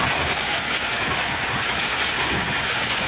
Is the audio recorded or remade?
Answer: remade